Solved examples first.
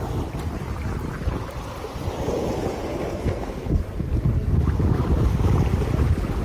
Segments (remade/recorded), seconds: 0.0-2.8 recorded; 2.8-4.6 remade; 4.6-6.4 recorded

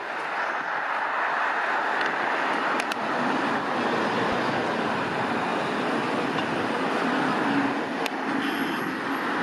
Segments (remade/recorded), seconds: 0.0-9.4 recorded

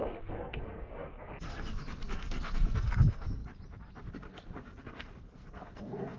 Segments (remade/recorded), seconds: 0.0-3.4 remade; 3.4-4.1 recorded; 4.1-6.2 remade

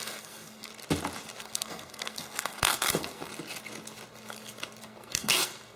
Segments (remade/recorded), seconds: 0.0-0.7 remade; 0.7-1.4 recorded; 1.4-3.3 remade; 3.3-4.8 recorded; 4.8-5.8 remade

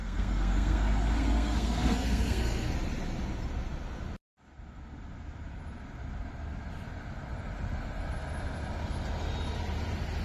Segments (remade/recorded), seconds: 0.0-2.8 remade; 2.8-10.2 recorded